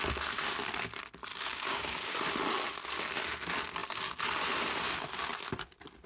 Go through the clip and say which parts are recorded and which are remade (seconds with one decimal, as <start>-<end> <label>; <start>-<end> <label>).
0.0-1.3 recorded; 1.3-2.2 remade; 2.2-6.1 recorded

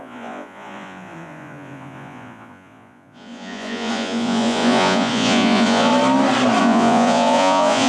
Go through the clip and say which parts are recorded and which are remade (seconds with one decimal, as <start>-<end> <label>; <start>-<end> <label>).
0.0-5.9 remade; 5.9-6.6 recorded; 6.6-7.9 remade